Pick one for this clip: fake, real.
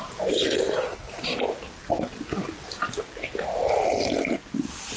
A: real